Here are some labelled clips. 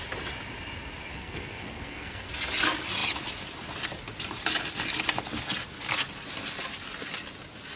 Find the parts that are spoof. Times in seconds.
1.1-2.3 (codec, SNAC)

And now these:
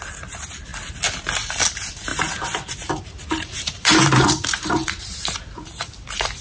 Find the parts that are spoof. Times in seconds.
2.1-5.9 (vocoder, BigVGAN v2)

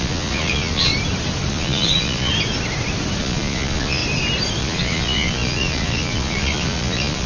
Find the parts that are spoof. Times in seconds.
0.0-0.9 (vocoder, Vocos); 1.5-2.3; 3.2-4.0; 4.6-7.3